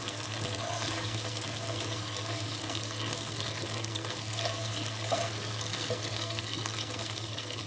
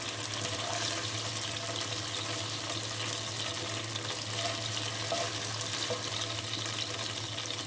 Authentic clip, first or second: second